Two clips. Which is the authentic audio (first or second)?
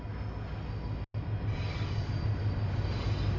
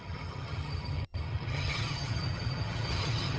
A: first